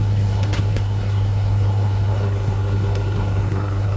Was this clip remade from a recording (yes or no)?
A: yes